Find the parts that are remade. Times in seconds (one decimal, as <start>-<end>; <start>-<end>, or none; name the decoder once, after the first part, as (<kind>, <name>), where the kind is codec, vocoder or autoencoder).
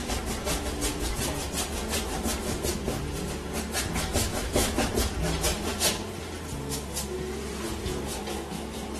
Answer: 4.3-4.9 (autoencoder, DAC-VAE)